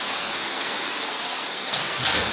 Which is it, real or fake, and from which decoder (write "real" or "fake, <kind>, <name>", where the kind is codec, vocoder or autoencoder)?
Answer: fake, codec, SNAC